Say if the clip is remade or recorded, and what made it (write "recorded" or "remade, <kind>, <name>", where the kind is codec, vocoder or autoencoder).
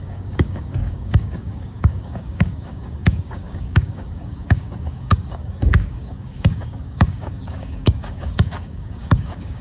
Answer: remade, codec, DAC